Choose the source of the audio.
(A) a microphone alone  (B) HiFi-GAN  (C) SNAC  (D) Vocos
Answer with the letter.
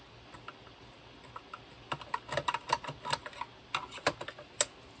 A